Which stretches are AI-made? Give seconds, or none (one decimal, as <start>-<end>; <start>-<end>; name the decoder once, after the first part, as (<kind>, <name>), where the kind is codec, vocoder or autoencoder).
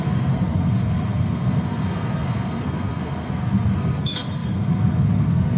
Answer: 0.0-5.6 (codec, SNAC)